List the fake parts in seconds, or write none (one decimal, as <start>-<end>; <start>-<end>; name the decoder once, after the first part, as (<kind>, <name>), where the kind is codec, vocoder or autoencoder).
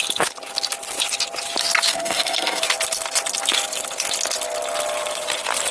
1.9-2.6 (codec, SNAC)